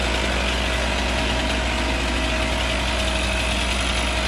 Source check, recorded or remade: recorded